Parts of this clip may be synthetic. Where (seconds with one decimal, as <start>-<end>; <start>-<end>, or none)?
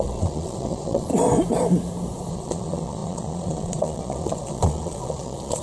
0.0-1.1; 2.3-5.6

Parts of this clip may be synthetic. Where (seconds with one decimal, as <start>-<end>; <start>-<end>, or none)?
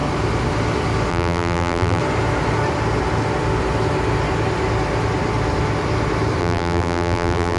1.1-2.0; 6.4-7.6